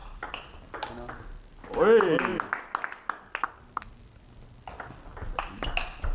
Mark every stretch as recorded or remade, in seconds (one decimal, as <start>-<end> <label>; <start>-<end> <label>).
0.0-6.1 recorded